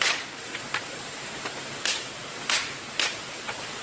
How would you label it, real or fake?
real